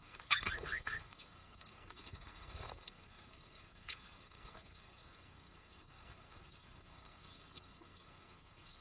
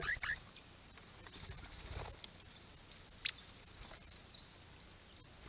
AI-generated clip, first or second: first